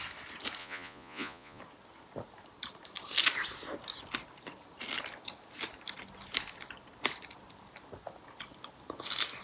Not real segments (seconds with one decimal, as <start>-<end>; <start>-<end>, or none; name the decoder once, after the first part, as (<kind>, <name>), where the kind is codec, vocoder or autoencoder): 0.6-1.6 (vocoder, Vocos)